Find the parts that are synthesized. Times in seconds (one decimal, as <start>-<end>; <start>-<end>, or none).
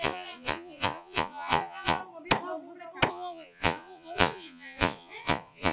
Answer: 0.0-2.0; 3.1-5.7